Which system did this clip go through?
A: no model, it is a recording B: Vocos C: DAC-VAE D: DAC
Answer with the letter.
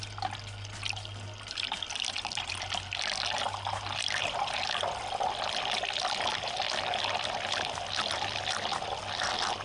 A